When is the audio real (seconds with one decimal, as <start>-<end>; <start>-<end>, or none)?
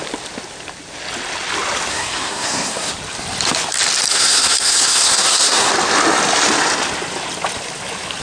0.0-1.9; 2.9-4.1; 5.7-8.2